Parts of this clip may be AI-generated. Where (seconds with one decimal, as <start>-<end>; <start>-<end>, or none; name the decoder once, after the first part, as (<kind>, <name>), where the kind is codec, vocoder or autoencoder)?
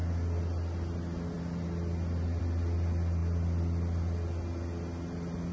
none